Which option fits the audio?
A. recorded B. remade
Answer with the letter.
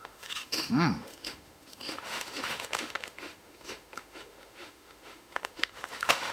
B